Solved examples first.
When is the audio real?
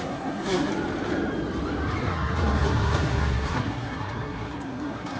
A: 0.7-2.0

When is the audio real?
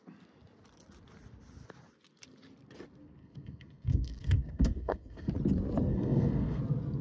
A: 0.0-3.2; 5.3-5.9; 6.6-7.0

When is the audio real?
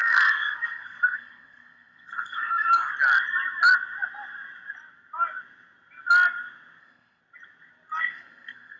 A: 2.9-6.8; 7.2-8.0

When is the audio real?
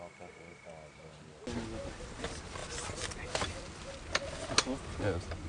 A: 0.0-5.5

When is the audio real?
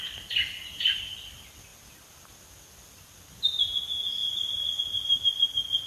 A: 0.0-5.9